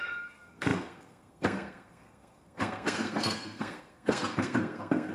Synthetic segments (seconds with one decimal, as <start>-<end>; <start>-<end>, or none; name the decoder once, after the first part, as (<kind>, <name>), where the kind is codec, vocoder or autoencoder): 0.0-5.1 (codec, SNAC)